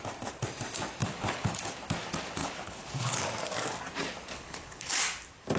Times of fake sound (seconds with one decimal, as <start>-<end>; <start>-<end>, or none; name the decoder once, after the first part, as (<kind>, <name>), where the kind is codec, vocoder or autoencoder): 1.0-1.7 (codec, HILCodec); 2.4-3.2; 4.3-4.9